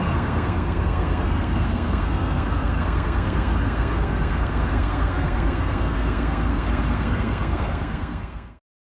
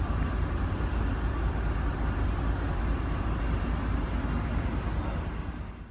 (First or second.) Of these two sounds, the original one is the second